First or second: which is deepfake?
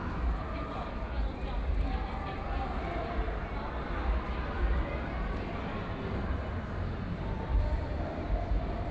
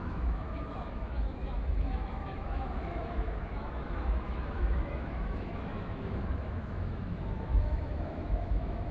second